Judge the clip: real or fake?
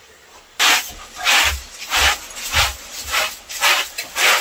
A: real